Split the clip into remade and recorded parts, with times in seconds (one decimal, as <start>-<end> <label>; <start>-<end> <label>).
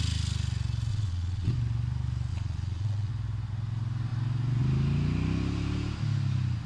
0.0-0.9 recorded; 0.9-1.5 remade; 1.5-2.3 recorded; 2.3-3.1 remade; 3.1-6.7 recorded